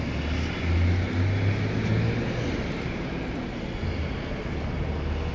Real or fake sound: real